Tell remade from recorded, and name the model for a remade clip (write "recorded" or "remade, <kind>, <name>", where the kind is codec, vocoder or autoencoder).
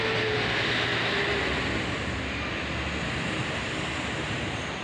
recorded